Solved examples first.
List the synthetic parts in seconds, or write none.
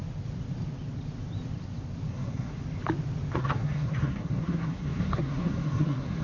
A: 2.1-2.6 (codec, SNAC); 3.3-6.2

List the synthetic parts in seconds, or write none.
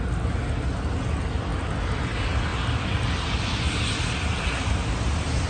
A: none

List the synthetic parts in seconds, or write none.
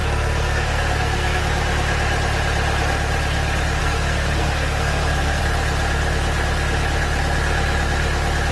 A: 0.0-1.4 (codec, SNAC); 3.8-5.4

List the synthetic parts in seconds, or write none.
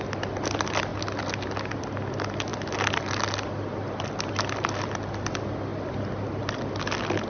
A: none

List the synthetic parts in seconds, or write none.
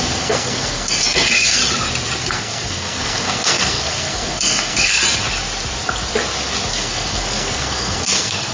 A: 0.0-1.6 (codec, SNAC); 2.2-5.0; 6.7-8.5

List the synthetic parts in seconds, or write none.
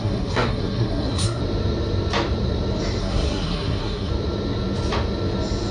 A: 0.0-1.4 (codec, SNAC); 3.0-4.1